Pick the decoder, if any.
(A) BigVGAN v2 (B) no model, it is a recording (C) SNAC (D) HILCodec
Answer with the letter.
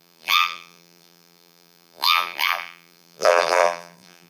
A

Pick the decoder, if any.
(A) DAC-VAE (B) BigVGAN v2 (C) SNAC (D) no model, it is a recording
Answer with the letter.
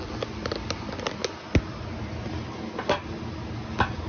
D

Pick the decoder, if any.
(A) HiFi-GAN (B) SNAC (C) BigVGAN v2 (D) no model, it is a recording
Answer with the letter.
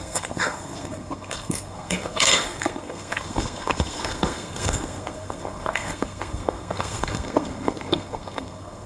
B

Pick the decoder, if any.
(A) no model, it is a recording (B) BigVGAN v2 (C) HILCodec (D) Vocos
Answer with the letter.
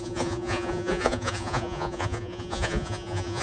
D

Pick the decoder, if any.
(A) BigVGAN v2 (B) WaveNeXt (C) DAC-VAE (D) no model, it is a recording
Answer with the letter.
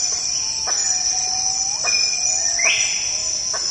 D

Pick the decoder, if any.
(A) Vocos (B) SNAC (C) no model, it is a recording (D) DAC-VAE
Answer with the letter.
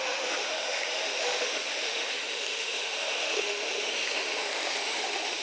D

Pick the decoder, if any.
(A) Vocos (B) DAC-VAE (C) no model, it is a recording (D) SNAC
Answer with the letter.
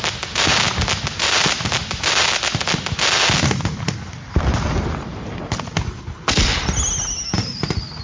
C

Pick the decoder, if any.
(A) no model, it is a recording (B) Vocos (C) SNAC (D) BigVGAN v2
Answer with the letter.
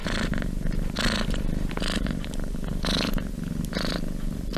D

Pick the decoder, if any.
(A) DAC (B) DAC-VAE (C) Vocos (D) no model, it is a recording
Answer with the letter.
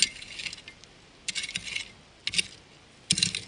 D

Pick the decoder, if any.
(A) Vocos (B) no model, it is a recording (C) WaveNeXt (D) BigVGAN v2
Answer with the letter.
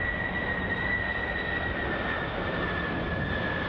B